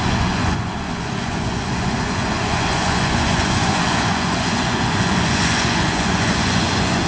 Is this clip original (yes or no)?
no